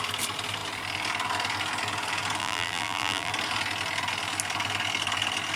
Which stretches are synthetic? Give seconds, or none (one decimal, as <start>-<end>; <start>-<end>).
2.4-3.3